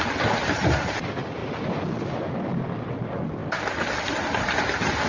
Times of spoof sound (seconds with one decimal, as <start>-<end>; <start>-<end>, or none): 1.4-3.0; 3.4-5.1